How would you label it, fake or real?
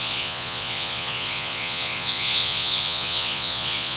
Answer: fake